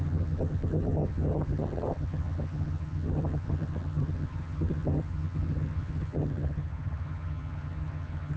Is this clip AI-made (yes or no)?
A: yes